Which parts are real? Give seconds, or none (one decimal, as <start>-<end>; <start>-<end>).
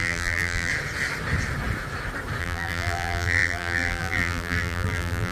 0.7-2.4